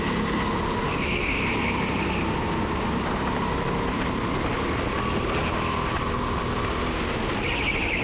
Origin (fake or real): real